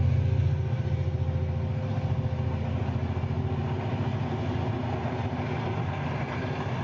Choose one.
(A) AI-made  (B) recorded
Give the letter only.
B